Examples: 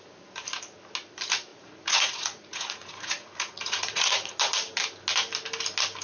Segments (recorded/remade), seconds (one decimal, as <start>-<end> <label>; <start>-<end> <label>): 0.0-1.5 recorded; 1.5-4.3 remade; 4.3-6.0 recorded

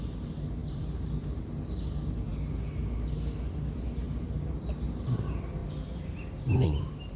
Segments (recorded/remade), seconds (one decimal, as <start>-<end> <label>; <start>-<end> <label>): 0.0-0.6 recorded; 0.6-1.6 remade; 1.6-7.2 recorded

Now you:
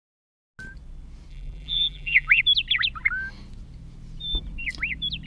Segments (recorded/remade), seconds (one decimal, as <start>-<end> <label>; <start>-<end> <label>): 0.0-1.3 recorded; 1.3-2.4 remade; 2.4-5.3 recorded

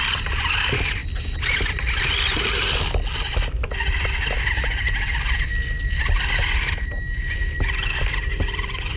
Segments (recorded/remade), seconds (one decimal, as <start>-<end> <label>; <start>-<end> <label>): 0.0-1.0 recorded; 1.0-2.0 remade; 2.0-9.0 recorded

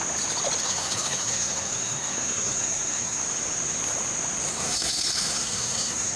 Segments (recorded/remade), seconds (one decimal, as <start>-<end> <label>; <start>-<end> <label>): 0.0-0.6 recorded; 0.6-3.2 remade; 3.2-4.5 recorded; 4.5-6.2 remade

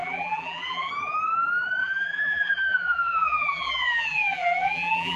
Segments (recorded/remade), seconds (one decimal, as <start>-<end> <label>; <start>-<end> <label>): 0.0-0.9 remade; 0.9-1.8 recorded; 1.8-5.2 remade